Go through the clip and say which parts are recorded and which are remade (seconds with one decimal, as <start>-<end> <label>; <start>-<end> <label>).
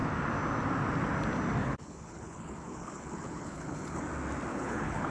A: 0.0-1.6 recorded; 1.6-4.0 remade; 4.0-4.5 recorded; 4.5-5.1 remade